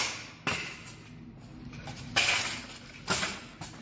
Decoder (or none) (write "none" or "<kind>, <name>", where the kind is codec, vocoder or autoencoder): none